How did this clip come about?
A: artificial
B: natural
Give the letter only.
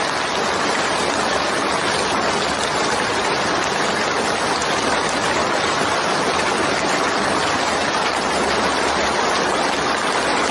B